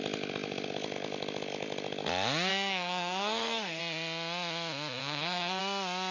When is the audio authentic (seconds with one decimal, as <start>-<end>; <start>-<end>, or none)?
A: 0.0-2.5; 3.8-5.0; 5.6-6.1